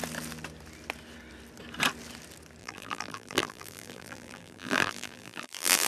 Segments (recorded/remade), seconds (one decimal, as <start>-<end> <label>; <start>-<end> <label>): 0.0-2.6 recorded; 2.6-5.9 remade